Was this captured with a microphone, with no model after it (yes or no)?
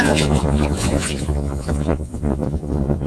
no